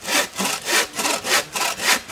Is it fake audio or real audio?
real